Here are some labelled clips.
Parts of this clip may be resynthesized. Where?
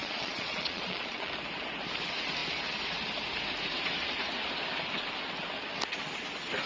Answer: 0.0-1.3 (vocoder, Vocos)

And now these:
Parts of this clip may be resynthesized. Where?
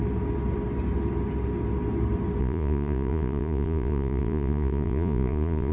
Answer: 2.4-5.7 (vocoder, Vocos)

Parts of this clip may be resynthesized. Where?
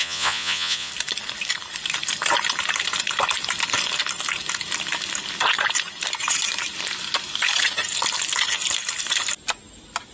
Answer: 0.0-0.9 (vocoder, Vocos)